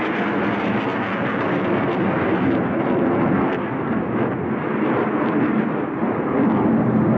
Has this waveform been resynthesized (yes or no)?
no